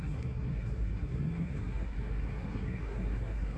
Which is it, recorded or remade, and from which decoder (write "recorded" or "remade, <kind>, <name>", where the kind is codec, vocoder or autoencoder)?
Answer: remade, codec, SNAC